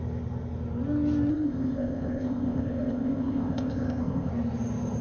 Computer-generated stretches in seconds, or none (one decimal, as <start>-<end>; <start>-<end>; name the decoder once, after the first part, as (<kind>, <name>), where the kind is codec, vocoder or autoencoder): 1.3-4.3 (codec, ZipCodec)